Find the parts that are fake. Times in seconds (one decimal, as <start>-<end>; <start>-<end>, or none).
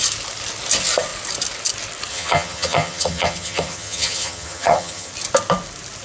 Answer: 2.1-5.1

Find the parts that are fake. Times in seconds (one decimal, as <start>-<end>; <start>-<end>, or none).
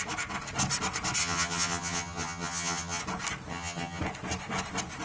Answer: 1.2-3.0; 3.5-4.0